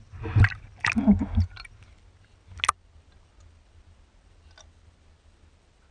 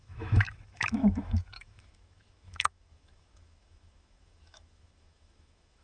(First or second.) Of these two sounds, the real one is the first